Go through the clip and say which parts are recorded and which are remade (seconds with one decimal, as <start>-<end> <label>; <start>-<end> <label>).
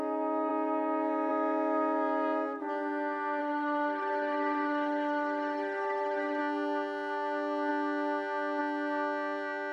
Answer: 0.0-3.4 recorded; 3.4-6.4 remade; 6.4-9.7 recorded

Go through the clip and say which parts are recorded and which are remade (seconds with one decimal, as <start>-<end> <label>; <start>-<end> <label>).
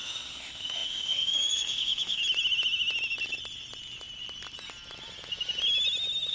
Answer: 0.0-2.2 remade; 2.2-6.3 recorded